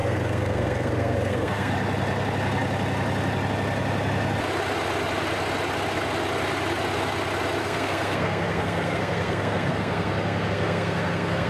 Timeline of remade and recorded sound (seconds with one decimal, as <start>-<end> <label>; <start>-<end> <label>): 0.0-1.7 remade; 1.7-7.6 recorded; 7.6-11.5 remade